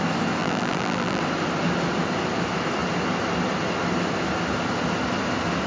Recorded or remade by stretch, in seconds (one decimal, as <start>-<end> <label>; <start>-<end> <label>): 0.0-0.4 recorded; 0.4-1.2 remade; 1.2-5.7 recorded